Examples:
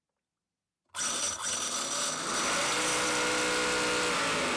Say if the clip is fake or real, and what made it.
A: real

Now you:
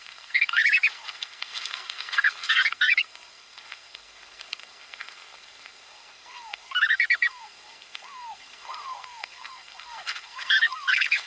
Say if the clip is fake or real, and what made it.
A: fake, codec, SNAC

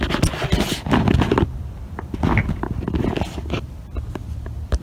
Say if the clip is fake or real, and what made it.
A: real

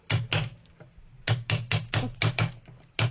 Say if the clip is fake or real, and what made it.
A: real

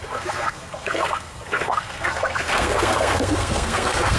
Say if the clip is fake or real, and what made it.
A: fake, codec, SNAC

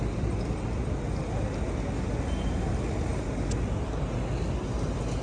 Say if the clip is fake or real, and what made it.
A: real